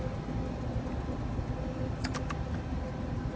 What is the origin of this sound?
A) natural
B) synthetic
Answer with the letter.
A